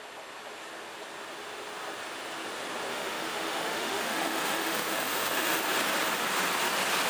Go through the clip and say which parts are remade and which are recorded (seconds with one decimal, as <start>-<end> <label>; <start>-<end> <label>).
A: 0.0-2.9 recorded; 2.9-5.6 remade; 5.6-7.1 recorded